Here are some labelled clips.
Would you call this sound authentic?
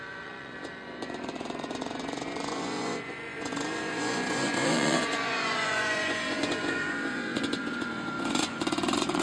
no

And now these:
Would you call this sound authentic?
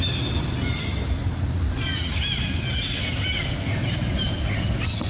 yes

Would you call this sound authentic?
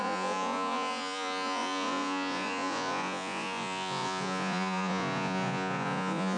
no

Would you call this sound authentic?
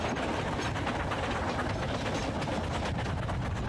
yes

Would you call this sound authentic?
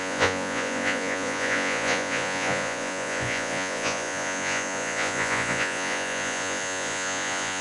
no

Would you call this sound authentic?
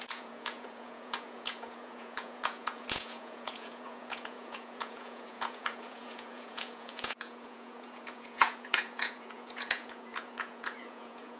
no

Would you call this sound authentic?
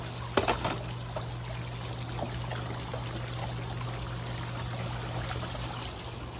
yes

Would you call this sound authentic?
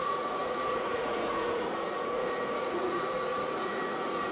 no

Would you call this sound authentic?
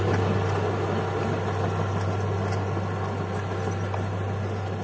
yes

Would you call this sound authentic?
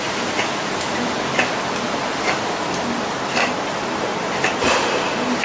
yes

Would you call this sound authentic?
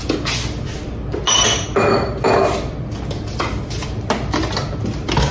yes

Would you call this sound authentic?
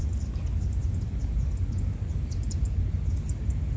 yes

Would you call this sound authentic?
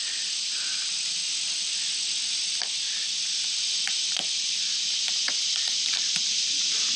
yes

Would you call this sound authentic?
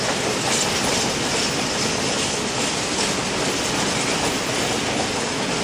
yes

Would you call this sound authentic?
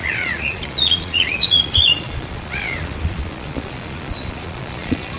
no